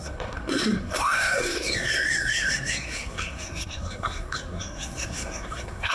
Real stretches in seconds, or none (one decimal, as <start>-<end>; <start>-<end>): none